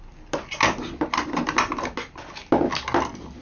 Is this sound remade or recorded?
recorded